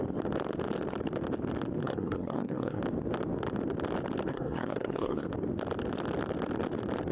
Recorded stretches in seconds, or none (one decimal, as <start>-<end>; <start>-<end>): 0.0-1.8; 2.8-4.3; 5.3-7.1